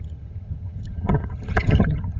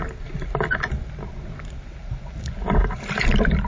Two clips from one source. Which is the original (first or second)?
second